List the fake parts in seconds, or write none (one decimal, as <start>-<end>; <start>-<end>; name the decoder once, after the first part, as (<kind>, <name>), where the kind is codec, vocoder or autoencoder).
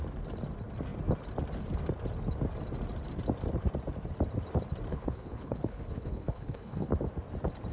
4.9-6.9 (codec, HILCodec)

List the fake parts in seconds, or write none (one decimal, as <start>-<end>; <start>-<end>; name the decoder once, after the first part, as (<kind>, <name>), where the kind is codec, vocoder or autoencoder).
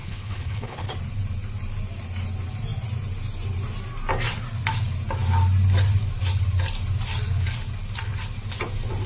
0.0-0.9 (codec, HILCodec)